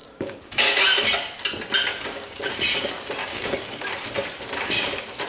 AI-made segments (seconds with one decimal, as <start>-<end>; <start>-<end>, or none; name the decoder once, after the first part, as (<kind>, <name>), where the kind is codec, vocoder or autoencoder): 0.0-0.8 (codec, DAC); 1.9-2.5; 3.2-3.9